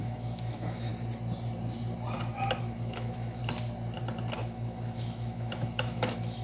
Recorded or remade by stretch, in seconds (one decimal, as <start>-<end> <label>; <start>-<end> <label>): 0.0-0.9 remade; 0.9-2.6 recorded; 2.6-3.4 remade; 3.4-4.4 recorded; 4.4-6.4 remade